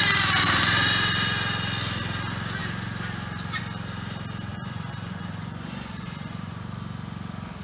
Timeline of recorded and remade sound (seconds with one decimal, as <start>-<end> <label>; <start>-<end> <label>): 0.0-4.5 recorded; 4.5-6.6 remade; 6.6-7.6 recorded